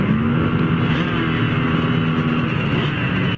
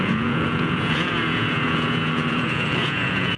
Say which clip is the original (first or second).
first